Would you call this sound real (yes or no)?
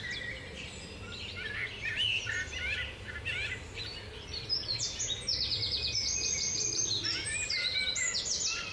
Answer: yes